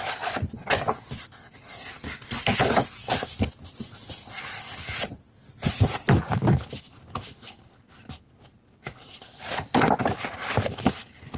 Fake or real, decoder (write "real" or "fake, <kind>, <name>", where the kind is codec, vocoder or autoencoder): real